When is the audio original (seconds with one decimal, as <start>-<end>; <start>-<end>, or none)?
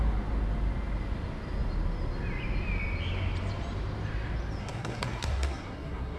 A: 0.0-4.6